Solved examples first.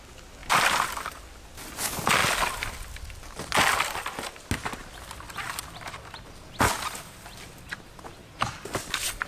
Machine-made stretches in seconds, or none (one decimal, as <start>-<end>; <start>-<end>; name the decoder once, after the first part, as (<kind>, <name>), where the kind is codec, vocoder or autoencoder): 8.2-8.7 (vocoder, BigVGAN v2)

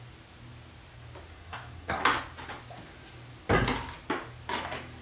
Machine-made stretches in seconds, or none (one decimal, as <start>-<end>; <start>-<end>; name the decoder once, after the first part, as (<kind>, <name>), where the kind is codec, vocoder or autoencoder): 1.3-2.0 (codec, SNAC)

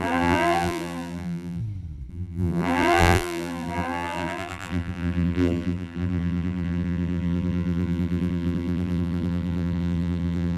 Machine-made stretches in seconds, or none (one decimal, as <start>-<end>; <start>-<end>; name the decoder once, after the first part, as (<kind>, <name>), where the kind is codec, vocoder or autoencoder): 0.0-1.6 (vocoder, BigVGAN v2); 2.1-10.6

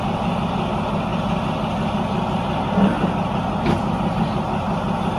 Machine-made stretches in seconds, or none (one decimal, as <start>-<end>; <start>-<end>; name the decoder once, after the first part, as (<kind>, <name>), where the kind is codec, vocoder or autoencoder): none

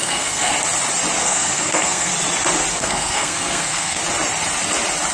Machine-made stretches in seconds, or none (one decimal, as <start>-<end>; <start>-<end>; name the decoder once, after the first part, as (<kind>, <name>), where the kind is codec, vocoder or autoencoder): 0.0-0.5 (codec, SNAC); 1.2-2.1; 2.7-4.0

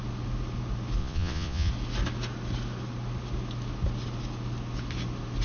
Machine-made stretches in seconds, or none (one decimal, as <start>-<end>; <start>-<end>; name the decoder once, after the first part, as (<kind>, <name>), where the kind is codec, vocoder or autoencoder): 1.0-1.7 (vocoder, Vocos)

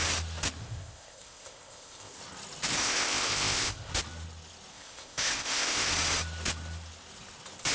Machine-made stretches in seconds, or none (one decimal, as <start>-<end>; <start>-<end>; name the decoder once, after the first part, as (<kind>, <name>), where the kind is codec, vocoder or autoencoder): 0.6-2.2 (codec, ZipCodec); 2.8-3.9; 4.7-5.9